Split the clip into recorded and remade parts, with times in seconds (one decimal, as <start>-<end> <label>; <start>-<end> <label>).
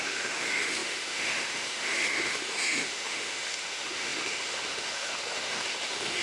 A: 0.0-6.2 remade